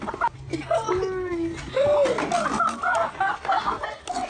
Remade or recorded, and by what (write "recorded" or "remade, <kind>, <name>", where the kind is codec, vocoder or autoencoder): recorded